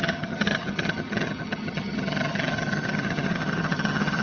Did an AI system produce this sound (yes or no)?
yes